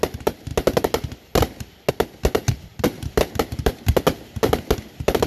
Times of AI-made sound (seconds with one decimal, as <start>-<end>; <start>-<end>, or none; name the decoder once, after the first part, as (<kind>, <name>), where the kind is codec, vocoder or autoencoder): none